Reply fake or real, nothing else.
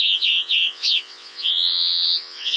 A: fake